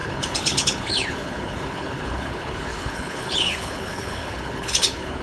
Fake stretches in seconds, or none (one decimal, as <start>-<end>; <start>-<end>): 0.0-5.2